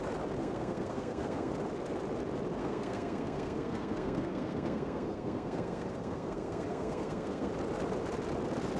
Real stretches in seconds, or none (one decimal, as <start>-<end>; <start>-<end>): 0.0-0.4; 1.5-2.6; 7.5-8.8